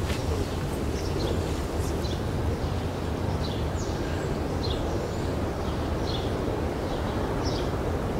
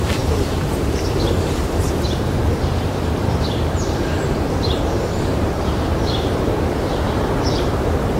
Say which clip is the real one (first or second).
first